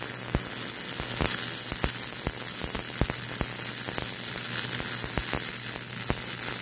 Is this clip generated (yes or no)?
no